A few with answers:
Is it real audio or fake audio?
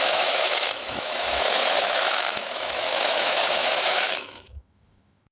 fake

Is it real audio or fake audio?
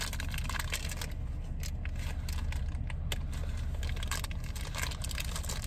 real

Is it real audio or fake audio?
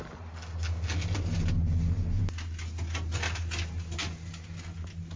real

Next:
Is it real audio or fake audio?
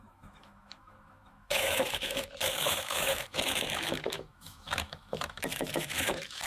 fake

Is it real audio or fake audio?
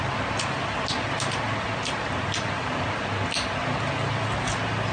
real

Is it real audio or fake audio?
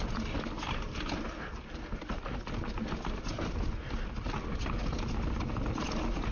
real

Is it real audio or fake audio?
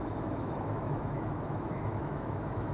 fake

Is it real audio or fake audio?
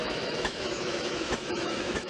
fake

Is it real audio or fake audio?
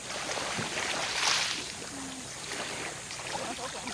real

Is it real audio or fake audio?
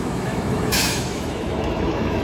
fake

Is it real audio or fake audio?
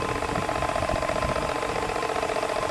real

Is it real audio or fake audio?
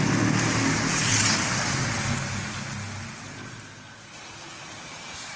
real